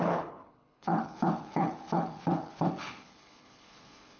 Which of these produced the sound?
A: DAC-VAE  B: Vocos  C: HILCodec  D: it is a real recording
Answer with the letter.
C